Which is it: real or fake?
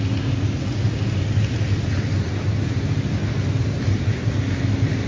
real